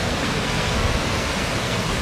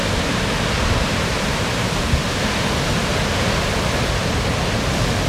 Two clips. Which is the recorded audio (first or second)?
second